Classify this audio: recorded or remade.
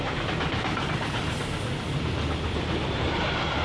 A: recorded